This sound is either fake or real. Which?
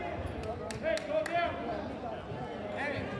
real